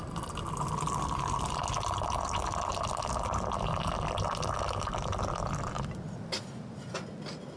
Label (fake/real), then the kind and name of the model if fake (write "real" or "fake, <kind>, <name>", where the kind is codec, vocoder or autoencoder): real